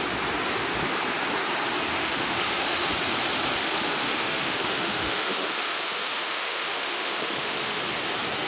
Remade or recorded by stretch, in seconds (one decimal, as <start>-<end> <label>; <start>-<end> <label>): 0.0-1.9 recorded; 1.9-2.9 remade; 2.9-3.6 recorded; 3.6-7.8 remade; 7.8-8.5 recorded